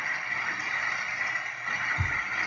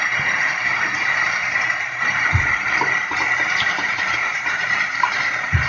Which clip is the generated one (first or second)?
second